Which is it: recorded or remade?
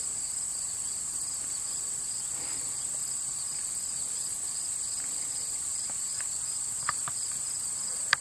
recorded